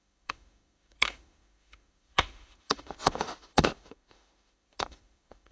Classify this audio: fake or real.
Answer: fake